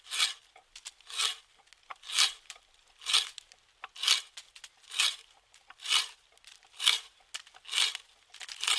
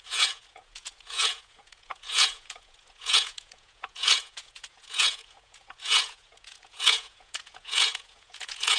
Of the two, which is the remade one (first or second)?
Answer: second